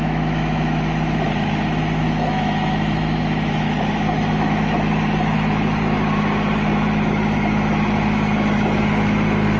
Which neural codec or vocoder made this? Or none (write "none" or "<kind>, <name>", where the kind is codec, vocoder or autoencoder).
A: autoencoder, DAC-VAE